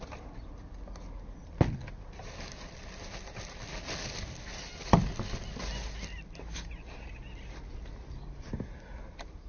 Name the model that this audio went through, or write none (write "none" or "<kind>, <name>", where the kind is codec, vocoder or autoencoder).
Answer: none